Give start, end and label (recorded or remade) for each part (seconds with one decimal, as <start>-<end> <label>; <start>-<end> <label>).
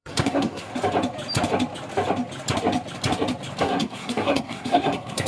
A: 0.0-0.7 remade; 0.7-3.6 recorded; 3.6-5.3 remade